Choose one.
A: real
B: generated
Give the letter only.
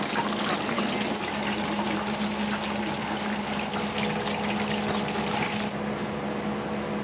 A